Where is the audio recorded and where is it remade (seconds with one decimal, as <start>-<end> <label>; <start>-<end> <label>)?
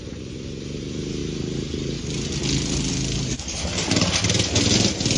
0.0-5.2 recorded